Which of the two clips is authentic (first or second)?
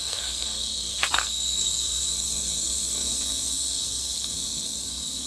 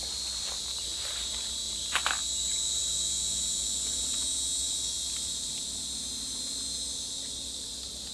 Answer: second